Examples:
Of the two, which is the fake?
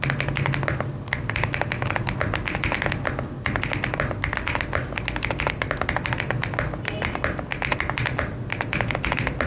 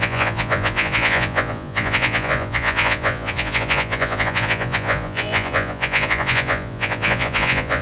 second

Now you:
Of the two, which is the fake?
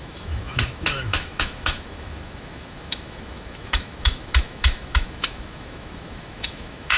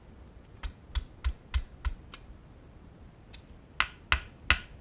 first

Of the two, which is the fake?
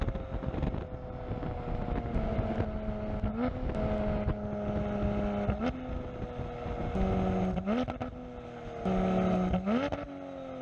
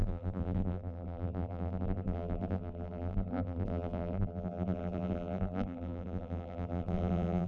second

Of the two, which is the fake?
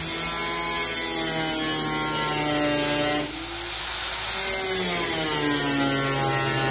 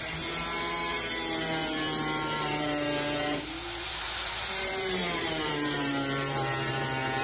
second